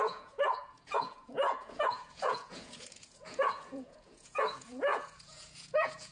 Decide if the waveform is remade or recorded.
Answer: remade